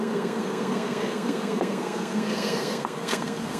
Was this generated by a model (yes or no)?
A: yes